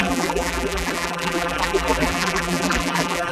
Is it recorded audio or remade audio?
remade